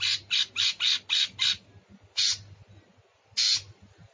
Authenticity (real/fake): real